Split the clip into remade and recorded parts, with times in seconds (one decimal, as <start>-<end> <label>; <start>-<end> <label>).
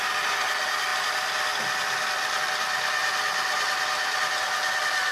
0.0-3.0 remade; 3.0-5.1 recorded